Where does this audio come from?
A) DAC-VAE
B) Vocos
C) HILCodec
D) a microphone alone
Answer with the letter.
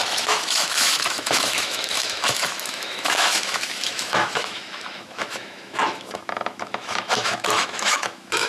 A